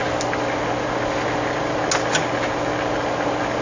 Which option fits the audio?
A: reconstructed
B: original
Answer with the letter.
B